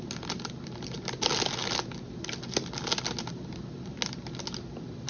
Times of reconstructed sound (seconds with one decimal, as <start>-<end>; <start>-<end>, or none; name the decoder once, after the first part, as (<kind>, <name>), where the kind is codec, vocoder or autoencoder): none